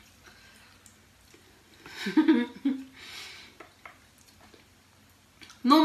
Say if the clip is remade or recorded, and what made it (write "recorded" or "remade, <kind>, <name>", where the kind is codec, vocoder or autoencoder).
recorded